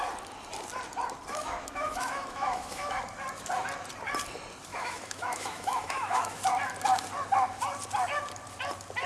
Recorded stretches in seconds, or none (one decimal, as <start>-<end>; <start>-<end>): 0.0-1.3; 3.0-4.7; 6.4-9.1